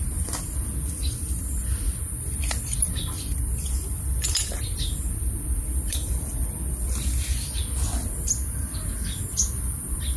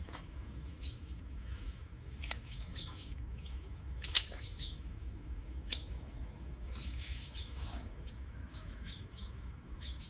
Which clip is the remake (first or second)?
second